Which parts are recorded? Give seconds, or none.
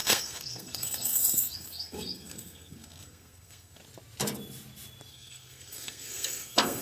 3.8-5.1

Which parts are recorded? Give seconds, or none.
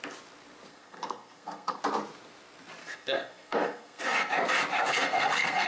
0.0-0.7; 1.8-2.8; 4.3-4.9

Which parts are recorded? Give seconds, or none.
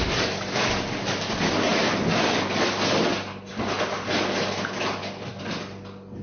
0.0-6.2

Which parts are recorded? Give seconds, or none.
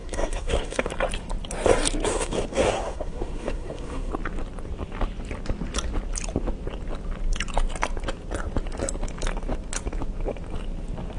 0.9-2.1; 4.1-11.2